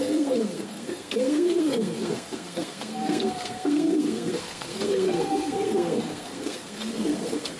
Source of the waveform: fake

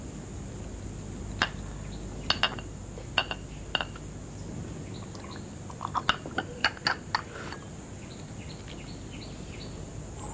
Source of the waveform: real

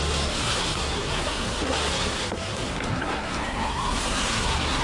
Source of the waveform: fake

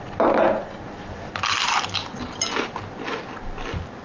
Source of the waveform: real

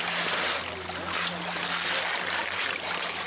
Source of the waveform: real